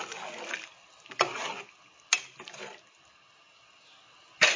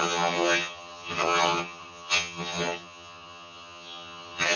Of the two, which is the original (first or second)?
first